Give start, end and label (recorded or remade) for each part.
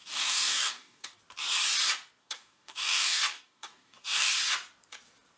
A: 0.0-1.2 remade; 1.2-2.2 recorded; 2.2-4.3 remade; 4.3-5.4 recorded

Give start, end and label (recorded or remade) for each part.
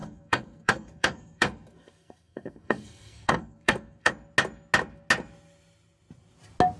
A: 0.0-4.1 remade; 4.1-6.8 recorded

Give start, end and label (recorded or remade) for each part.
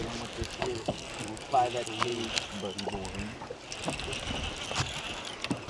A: 0.0-0.6 recorded; 0.6-1.1 remade; 1.1-5.7 recorded